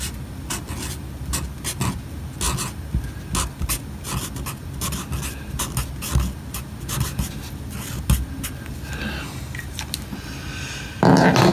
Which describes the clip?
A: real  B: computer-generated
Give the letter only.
A